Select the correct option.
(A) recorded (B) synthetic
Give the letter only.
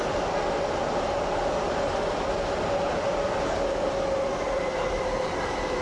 A